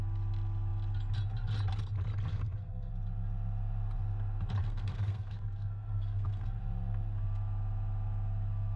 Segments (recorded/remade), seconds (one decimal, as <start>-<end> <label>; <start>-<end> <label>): 0.0-2.3 recorded; 2.3-2.9 remade; 2.9-4.6 recorded; 4.6-6.6 remade; 6.6-8.8 recorded